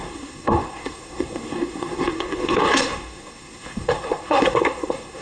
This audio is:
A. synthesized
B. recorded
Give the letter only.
A